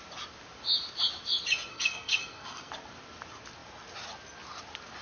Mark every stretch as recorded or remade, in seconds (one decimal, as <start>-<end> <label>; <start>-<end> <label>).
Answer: 0.0-1.7 recorded; 1.7-2.7 remade; 2.7-5.0 recorded